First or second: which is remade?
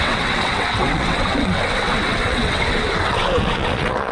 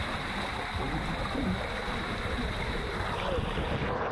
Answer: first